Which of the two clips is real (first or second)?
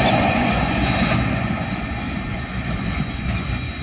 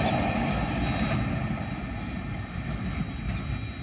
second